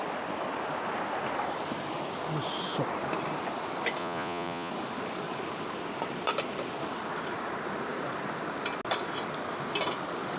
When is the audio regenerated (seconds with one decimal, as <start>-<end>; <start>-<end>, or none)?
4.0-4.7